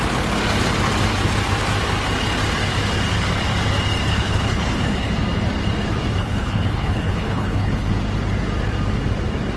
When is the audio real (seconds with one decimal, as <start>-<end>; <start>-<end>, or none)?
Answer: 0.0-4.1; 5.1-6.2; 7.9-9.6